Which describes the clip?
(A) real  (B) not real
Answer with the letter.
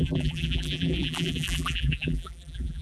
B